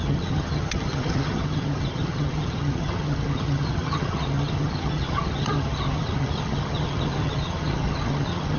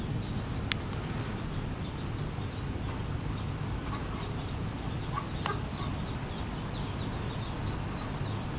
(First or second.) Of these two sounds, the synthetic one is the first